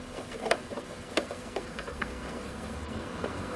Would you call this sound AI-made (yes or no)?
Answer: yes